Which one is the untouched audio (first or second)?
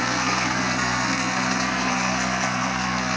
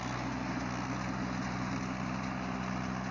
second